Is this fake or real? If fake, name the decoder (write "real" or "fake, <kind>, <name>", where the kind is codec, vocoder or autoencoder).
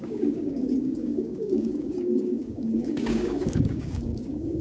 fake, codec, DAC